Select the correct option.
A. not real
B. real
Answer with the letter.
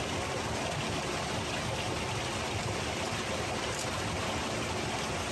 B